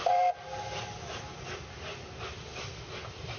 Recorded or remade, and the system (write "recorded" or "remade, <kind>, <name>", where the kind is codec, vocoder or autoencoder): recorded